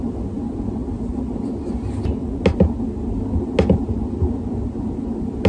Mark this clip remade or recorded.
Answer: recorded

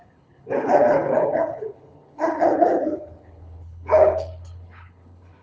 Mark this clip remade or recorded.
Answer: remade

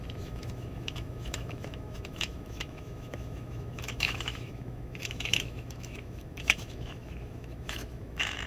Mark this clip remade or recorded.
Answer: remade